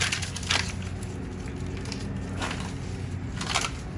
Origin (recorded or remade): recorded